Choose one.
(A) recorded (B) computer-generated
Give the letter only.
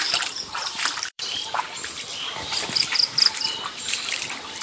B